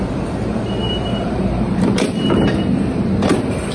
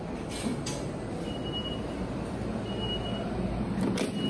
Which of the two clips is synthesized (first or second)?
first